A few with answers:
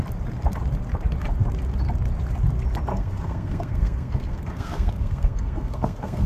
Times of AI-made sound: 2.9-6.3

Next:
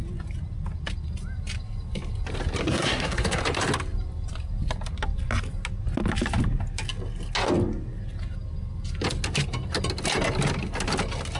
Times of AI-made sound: 2.6-3.4

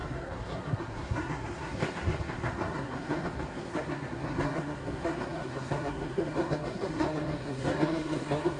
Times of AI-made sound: 0.0-8.6

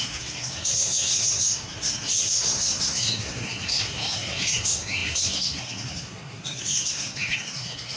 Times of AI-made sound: 0.0-8.0